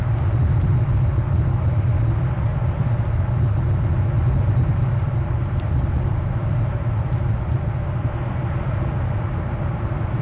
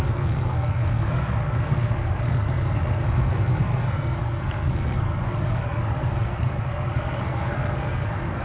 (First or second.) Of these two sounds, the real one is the first